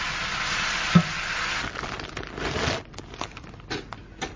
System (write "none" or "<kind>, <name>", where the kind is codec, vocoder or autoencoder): none